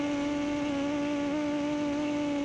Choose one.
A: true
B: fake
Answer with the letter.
A